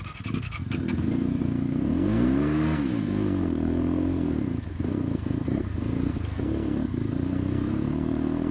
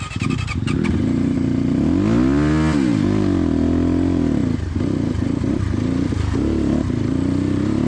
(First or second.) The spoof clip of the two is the first